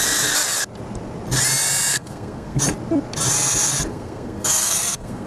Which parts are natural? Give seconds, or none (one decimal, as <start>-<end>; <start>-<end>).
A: 0.0-1.9; 2.6-3.9